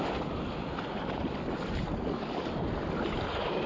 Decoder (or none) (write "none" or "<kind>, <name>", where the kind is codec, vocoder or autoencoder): none